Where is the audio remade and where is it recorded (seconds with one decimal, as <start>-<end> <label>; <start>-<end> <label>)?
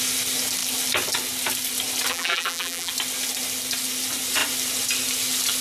0.0-2.1 recorded; 2.1-2.9 remade; 2.9-5.6 recorded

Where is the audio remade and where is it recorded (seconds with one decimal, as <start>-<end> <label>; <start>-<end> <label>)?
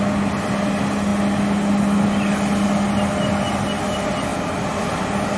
0.0-5.4 recorded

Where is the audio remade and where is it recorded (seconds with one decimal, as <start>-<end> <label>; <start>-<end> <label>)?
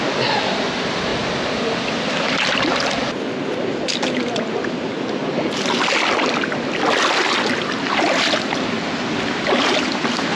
0.0-10.4 recorded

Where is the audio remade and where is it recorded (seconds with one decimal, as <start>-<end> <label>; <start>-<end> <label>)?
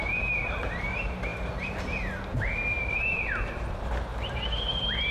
0.0-5.1 remade